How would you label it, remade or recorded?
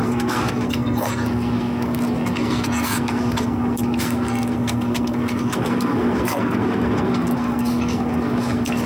remade